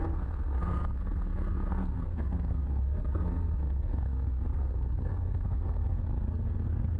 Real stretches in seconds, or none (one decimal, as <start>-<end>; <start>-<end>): none